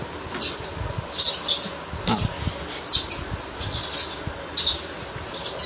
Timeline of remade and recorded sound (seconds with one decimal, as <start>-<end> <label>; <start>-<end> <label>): 0.0-5.7 recorded